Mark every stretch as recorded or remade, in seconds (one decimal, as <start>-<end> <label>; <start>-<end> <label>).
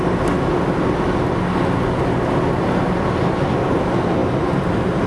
0.0-5.1 recorded